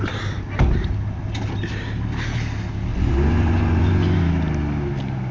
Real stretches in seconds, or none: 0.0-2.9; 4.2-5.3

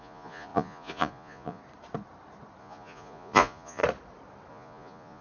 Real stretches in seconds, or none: 1.6-2.6; 3.8-4.5

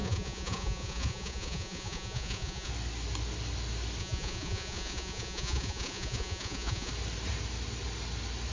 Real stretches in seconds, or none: 2.7-4.0; 6.9-8.5

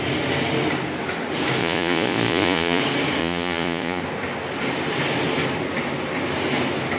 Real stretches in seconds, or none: 0.0-1.6; 2.8-3.2; 4.0-7.0

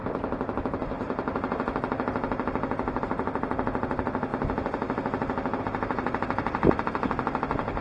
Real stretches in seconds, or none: 0.0-7.8